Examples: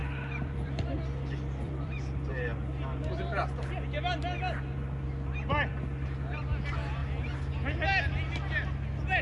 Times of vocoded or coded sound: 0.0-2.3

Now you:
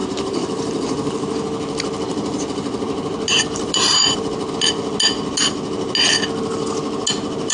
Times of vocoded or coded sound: 0.0-4.5

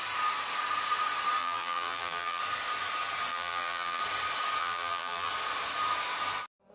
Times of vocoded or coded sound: 1.4-2.4; 3.3-4.0; 4.6-5.3